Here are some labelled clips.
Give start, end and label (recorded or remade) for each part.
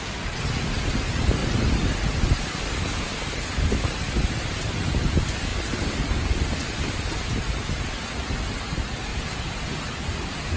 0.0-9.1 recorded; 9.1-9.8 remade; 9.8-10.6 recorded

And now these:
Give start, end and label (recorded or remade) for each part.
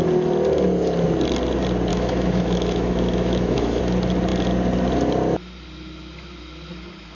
0.0-1.9 recorded; 1.9-3.8 remade; 3.8-7.1 recorded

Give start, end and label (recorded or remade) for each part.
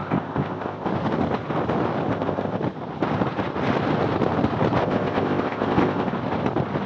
0.0-0.9 remade; 0.9-2.1 recorded; 2.1-2.6 remade; 2.6-4.8 recorded; 4.8-6.1 remade; 6.1-6.9 recorded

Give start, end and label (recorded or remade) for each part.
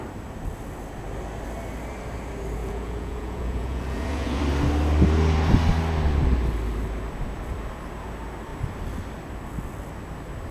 0.0-2.6 recorded; 2.6-4.4 remade; 4.4-10.5 recorded